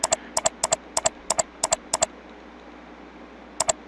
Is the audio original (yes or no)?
yes